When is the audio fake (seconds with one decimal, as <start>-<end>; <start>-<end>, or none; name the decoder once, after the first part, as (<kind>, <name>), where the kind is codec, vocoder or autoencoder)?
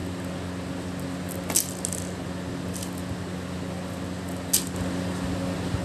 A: none